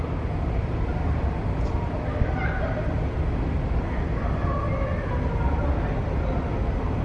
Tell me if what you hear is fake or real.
real